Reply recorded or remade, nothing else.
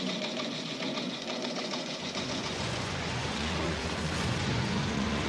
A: remade